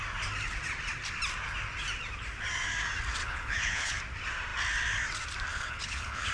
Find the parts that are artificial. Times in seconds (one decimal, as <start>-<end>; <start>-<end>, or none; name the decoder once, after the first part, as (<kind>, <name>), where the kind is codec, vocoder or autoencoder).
3.2-4.0 (codec, HILCodec); 5.5-6.3

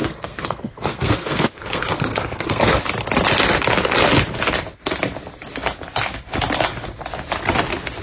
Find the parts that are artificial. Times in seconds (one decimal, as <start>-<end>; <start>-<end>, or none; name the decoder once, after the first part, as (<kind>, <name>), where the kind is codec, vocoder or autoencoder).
0.0-2.8 (codec, SNAC)

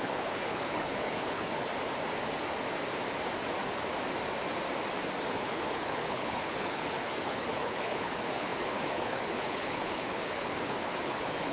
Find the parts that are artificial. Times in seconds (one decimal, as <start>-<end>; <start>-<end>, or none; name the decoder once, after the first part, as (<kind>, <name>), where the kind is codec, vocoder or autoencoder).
0.0-1.7 (codec, HILCodec); 5.2-11.5

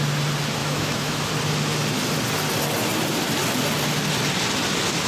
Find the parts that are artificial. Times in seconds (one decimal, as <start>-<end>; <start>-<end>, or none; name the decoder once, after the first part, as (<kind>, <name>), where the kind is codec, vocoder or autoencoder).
0.6-1.3 (autoencoder, DAC-VAE)